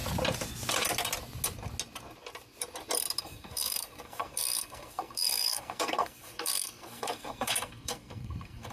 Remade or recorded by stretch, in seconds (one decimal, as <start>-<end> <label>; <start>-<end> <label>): 0.0-3.2 recorded; 3.2-8.7 remade